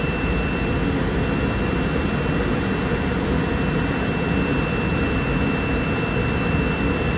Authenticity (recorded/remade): recorded